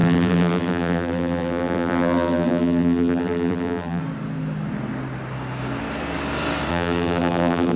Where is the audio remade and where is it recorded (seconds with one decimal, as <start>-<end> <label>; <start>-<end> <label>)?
0.0-4.0 remade; 4.0-6.7 recorded; 6.7-7.8 remade